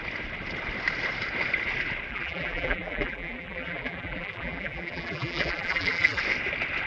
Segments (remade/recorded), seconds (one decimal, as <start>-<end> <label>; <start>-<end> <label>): 0.0-2.1 recorded; 2.1-6.2 remade; 6.2-6.9 recorded